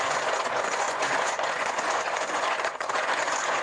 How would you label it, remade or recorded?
remade